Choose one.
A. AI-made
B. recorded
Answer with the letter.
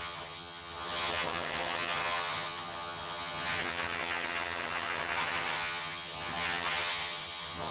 A